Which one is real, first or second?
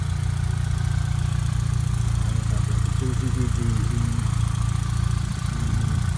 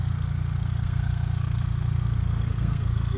first